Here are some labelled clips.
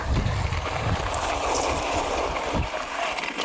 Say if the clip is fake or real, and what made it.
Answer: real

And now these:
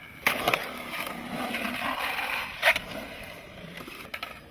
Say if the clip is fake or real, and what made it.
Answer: real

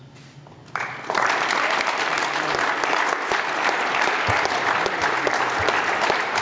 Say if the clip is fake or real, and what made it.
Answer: real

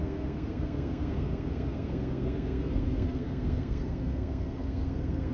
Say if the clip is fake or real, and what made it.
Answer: fake, codec, SNAC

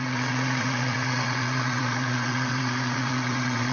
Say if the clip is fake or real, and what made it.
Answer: fake, vocoder, WaveNeXt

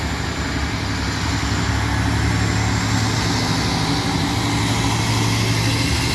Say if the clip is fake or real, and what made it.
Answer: real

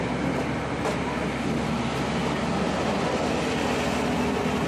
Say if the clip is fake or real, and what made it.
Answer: real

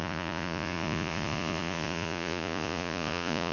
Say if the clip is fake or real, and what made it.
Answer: fake, vocoder, Vocos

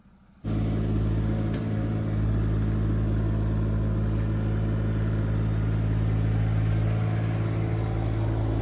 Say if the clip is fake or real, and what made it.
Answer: real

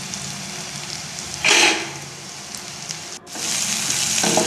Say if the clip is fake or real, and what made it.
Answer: real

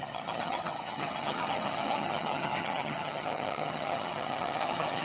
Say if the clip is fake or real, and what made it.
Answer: fake, vocoder, HiFi-GAN